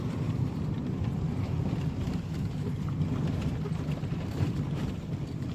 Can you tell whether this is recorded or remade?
remade